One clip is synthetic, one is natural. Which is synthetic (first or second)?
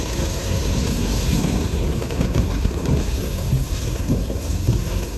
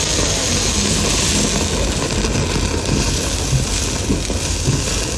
first